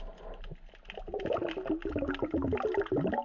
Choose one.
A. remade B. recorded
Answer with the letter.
B